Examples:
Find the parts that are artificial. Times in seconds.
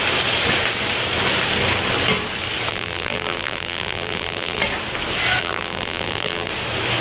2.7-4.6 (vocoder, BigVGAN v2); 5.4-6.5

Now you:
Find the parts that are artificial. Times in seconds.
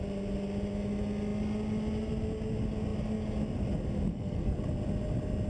4.1-4.6 (codec, SNAC)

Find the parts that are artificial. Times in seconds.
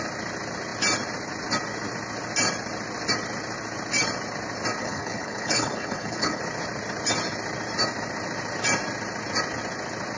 4.8-6.4 (codec, HILCodec)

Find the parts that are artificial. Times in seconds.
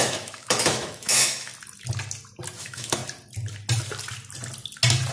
0.0-1.5 (autoencoder, DAC-VAE); 2.6-3.0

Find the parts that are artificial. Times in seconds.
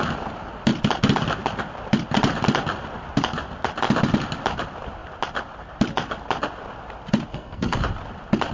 7.3-7.8 (codec, SNAC)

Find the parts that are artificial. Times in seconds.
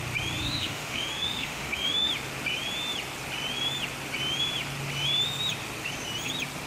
0.4-2.1 (autoencoder, DAC-VAE)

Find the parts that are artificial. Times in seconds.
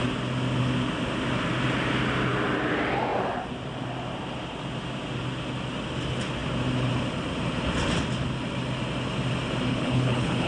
9.7-10.5 (codec, HILCodec)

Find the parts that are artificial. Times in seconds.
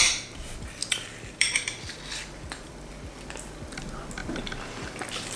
0.8-3.3 (vocoder, BigVGAN v2)